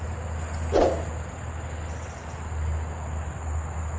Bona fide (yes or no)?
yes